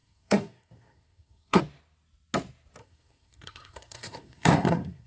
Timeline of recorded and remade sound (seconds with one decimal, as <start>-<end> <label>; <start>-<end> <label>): 0.0-1.6 remade; 1.6-2.8 recorded; 2.8-5.1 remade